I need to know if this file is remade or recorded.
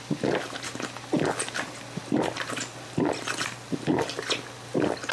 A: recorded